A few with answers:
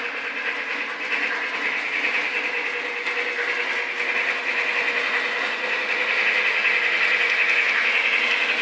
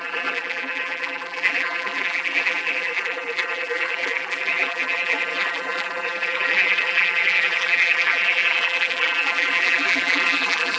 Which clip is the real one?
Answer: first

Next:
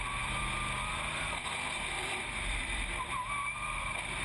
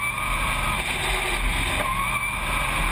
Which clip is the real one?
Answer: second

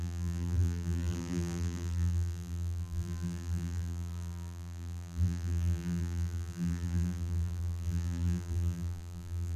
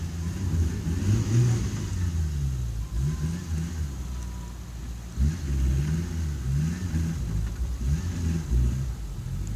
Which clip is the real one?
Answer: second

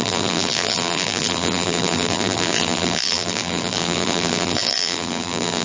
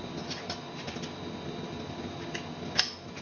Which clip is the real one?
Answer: second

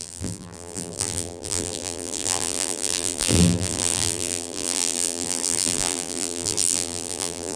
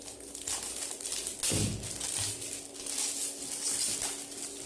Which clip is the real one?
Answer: second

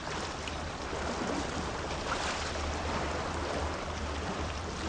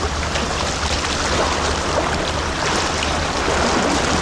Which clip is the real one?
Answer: second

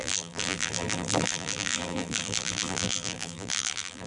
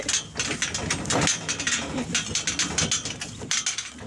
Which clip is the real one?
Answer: second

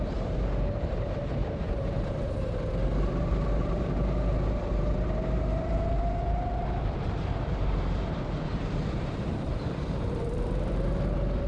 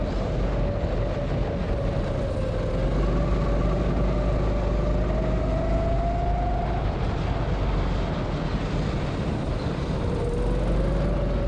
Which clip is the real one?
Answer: second